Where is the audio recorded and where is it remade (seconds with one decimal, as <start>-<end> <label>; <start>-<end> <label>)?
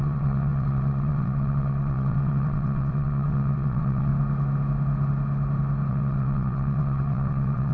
0.0-4.1 remade; 4.1-5.9 recorded; 5.9-7.7 remade